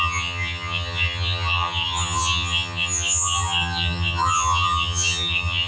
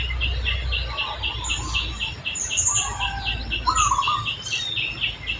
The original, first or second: second